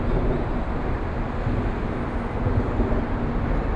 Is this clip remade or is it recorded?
recorded